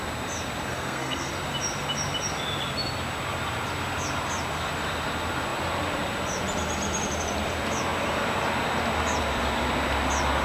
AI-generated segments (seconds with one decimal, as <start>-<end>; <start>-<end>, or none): 0.7-1.3